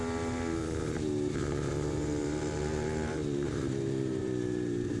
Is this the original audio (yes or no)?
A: no